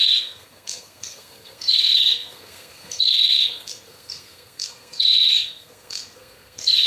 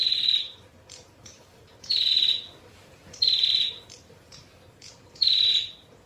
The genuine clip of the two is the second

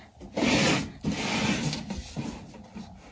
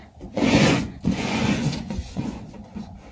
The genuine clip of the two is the first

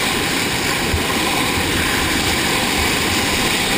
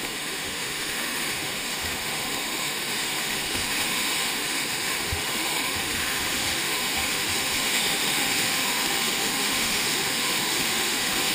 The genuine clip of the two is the first